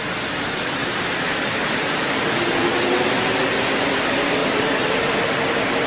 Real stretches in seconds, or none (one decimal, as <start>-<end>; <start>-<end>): 0.0-0.8; 2.1-4.4; 5.4-5.9